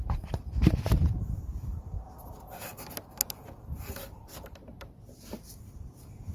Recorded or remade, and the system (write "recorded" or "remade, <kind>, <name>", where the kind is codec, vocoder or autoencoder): remade, vocoder, BigVGAN v2